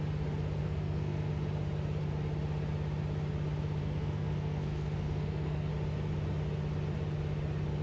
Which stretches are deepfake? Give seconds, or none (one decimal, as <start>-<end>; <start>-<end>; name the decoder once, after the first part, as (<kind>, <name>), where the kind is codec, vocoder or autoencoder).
0.6-1.3 (codec, SNAC); 3.8-5.7